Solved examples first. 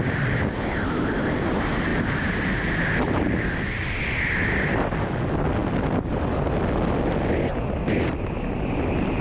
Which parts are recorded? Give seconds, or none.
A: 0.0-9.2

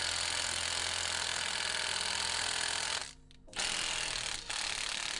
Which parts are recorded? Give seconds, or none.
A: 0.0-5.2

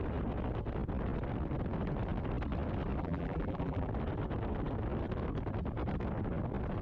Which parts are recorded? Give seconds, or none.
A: 0.0-3.0; 3.9-6.8

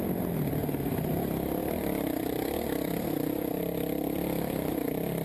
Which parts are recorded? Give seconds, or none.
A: 0.0-1.6; 4.7-5.2